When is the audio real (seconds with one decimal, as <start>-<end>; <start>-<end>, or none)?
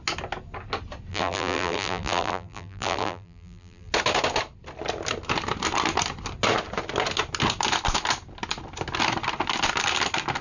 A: 0.0-1.1; 3.9-10.4